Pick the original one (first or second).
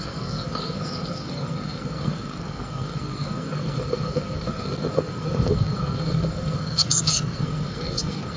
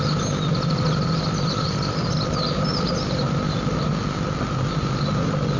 second